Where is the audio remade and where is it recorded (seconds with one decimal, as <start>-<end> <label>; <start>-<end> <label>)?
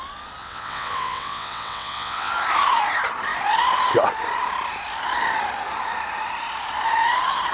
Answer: 0.0-0.4 recorded; 0.4-2.3 remade; 2.3-7.5 recorded